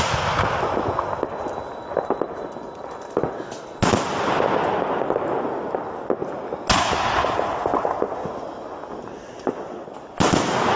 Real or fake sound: real